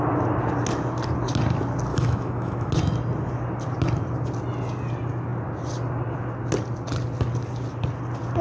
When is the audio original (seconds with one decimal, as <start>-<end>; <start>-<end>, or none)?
0.0-1.9; 2.7-8.4